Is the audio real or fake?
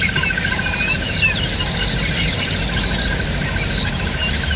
real